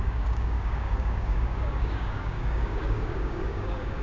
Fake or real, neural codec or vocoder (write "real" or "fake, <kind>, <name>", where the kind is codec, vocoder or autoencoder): fake, codec, DAC